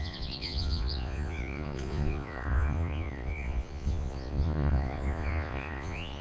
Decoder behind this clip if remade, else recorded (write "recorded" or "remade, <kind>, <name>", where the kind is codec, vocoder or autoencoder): remade, vocoder, Vocos